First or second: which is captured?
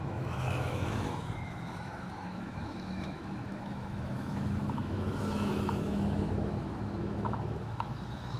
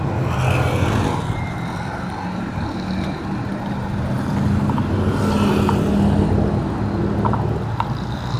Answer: second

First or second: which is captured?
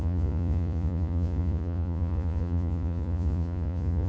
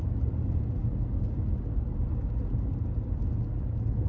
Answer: second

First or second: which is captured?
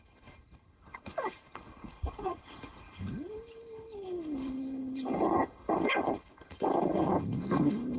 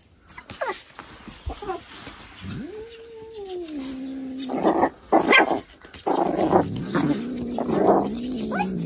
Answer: second